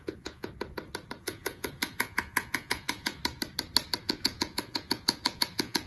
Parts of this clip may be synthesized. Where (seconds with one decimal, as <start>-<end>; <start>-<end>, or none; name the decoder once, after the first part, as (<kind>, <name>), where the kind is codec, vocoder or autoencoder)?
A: 0.0-0.5 (vocoder, Vocos); 1.2-3.2; 4.0-5.9